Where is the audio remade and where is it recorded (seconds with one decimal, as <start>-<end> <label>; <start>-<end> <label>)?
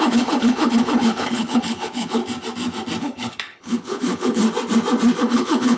0.0-2.2 remade; 2.2-3.0 recorded; 3.0-4.4 remade; 4.4-5.2 recorded; 5.2-5.8 remade